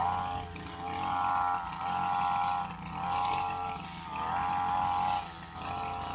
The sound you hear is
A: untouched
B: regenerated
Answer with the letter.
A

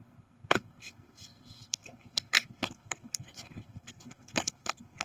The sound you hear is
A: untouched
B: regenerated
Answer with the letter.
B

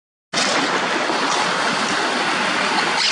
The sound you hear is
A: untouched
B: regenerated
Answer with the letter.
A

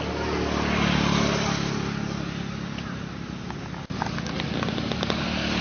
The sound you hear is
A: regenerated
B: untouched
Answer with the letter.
B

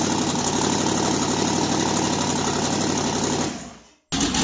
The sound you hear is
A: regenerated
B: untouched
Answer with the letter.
B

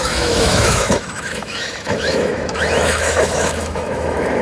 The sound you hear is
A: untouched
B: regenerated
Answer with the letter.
B